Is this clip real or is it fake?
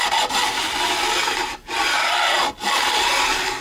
real